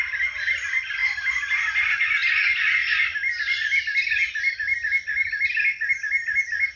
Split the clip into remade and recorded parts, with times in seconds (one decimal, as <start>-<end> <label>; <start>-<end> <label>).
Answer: 0.0-6.8 recorded